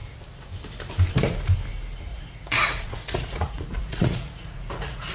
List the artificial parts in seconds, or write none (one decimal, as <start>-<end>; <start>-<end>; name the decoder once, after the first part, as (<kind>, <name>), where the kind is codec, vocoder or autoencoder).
2.1-5.1 (vocoder, Vocos)